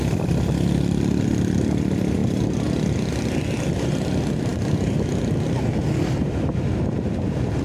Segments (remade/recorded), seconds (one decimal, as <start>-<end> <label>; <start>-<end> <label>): 0.0-7.6 recorded